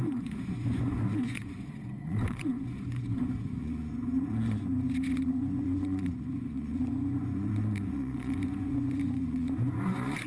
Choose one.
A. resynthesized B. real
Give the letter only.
A